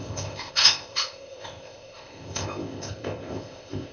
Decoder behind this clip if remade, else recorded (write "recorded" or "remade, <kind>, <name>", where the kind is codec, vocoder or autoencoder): remade, codec, ZipCodec